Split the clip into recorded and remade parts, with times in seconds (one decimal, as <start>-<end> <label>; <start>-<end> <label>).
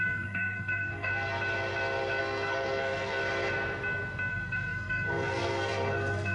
0.0-1.1 remade; 1.1-2.2 recorded; 2.2-3.2 remade; 3.2-4.3 recorded; 4.3-6.3 remade